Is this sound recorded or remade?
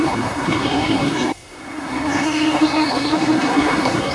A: remade